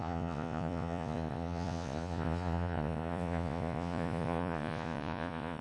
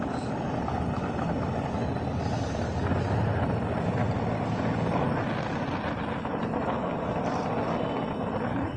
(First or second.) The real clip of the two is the second